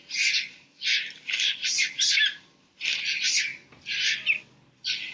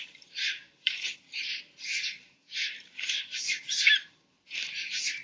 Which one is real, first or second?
first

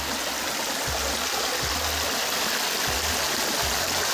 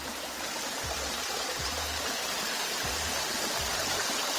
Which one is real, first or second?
first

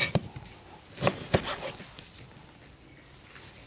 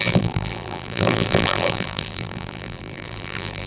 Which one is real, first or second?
first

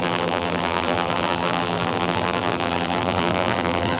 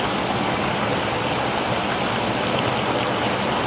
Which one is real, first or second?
second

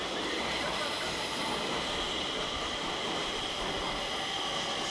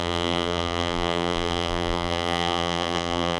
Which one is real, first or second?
first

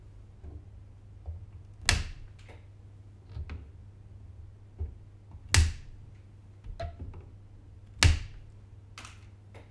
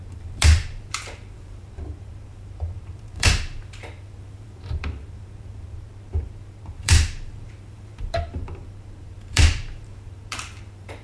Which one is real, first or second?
first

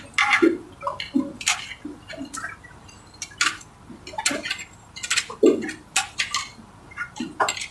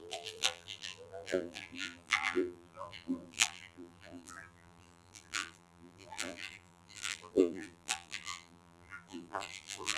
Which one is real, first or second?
first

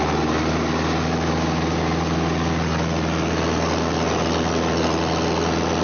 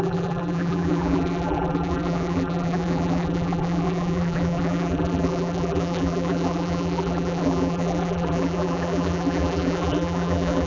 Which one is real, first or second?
first